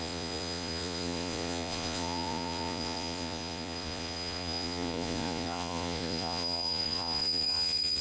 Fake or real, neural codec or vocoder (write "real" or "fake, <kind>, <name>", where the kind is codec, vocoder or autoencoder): fake, vocoder, Vocos